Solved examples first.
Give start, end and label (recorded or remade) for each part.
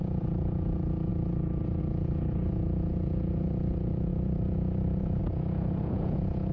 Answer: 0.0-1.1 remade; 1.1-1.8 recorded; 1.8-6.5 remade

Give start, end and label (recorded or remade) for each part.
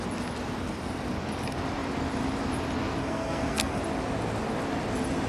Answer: 0.0-3.0 recorded; 3.0-3.8 remade; 3.8-5.3 recorded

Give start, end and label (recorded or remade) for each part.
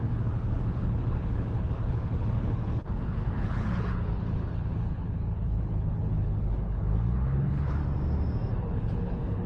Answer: 0.0-7.8 remade; 7.8-8.6 recorded; 8.6-9.5 remade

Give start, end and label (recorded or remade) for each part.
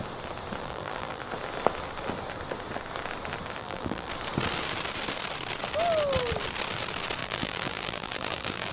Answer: 0.0-0.6 recorded; 0.6-1.2 remade; 1.2-3.6 recorded; 3.6-4.1 remade; 4.1-7.2 recorded; 7.2-8.7 remade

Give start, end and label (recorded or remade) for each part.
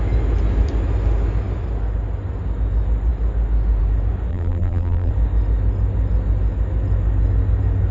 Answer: 0.0-4.3 recorded; 4.3-5.1 remade; 5.1-7.9 recorded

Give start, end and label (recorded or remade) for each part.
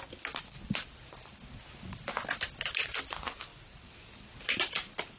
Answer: 0.0-5.2 recorded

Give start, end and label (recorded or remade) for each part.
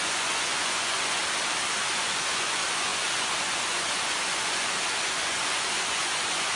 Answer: 0.0-1.2 remade; 1.2-1.9 recorded; 1.9-6.6 remade